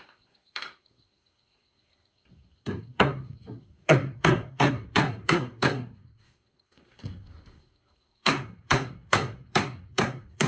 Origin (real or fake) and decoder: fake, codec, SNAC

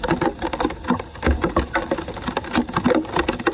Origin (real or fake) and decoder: real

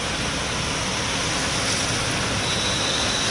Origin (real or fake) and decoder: real